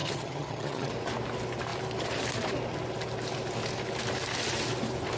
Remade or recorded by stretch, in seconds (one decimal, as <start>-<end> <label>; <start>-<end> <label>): 0.0-0.9 remade; 0.9-5.2 recorded